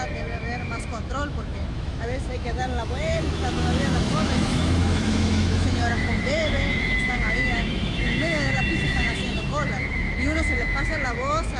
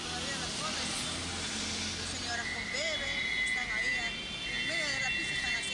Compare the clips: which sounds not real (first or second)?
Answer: first